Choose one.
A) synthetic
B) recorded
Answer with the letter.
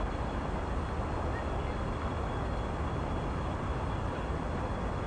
B